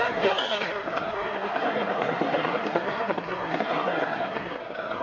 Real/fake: fake